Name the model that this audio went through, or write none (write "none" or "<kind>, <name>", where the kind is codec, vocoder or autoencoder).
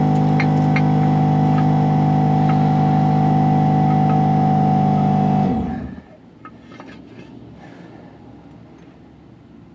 none